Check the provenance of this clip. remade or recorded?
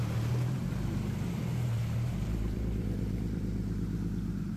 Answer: remade